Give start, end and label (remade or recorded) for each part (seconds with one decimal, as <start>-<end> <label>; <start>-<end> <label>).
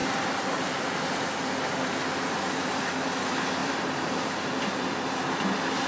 0.0-3.6 recorded; 3.6-5.1 remade; 5.1-5.9 recorded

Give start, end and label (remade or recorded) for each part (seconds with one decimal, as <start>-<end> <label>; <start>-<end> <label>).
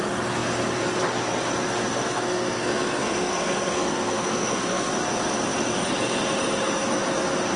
0.0-1.8 recorded; 1.8-4.9 remade; 4.9-7.6 recorded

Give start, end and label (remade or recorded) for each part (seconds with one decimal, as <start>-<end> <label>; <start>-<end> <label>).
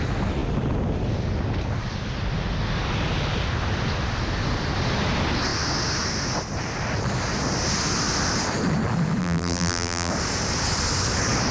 0.0-9.2 recorded; 9.2-10.1 remade; 10.1-11.5 recorded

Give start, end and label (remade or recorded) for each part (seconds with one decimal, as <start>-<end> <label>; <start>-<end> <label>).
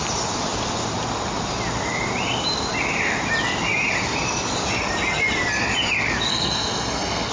0.0-6.3 recorded; 6.3-7.3 remade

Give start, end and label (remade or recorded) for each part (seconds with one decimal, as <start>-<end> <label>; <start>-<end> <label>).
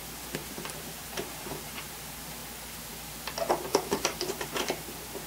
0.0-0.4 recorded; 0.4-1.9 remade; 1.9-3.7 recorded; 3.7-4.5 remade; 4.5-5.3 recorded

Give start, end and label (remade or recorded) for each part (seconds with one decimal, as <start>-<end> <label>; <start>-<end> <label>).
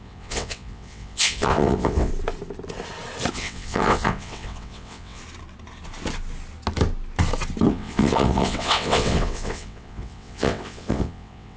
0.0-2.1 remade; 2.1-3.3 recorded; 3.3-5.2 remade; 5.2-7.7 recorded; 7.7-11.6 remade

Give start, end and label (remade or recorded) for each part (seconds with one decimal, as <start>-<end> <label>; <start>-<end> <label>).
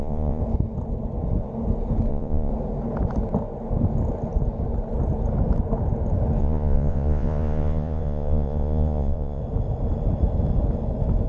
0.0-0.4 remade; 0.4-2.1 recorded; 2.1-2.5 remade; 2.5-6.4 recorded; 6.4-9.4 remade; 9.4-11.3 recorded